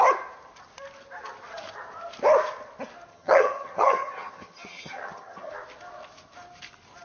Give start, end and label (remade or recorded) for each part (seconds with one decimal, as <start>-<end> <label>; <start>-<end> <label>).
0.0-3.1 recorded; 3.1-5.5 remade; 5.5-7.0 recorded